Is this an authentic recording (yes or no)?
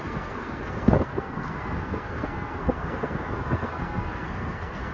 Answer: no